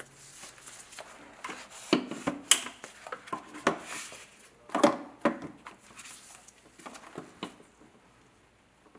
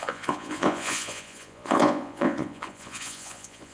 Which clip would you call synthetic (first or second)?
second